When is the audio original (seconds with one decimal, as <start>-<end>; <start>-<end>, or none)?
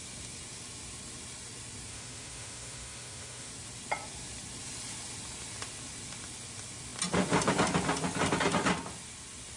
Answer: 0.0-1.9; 3.5-9.6